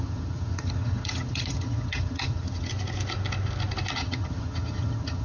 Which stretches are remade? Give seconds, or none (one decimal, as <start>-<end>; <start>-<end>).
0.0-2.7; 3.9-5.2